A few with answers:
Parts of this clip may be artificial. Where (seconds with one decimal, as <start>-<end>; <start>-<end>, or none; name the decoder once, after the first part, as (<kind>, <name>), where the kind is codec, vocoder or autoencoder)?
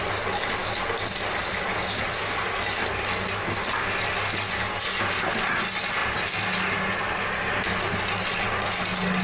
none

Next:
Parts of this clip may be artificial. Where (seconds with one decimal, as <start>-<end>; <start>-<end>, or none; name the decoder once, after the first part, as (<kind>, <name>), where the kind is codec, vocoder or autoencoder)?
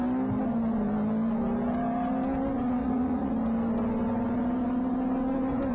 2.8-3.3 (vocoder, Vocos)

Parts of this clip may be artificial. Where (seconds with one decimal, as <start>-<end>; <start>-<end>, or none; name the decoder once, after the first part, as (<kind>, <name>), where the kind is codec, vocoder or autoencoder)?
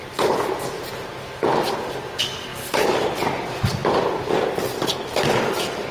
none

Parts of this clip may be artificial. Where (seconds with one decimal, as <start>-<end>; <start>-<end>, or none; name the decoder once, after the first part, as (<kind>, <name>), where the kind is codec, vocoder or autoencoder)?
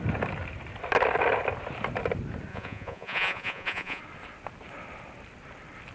2.5-4.0 (vocoder, Vocos)